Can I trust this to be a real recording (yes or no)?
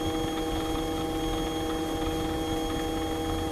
yes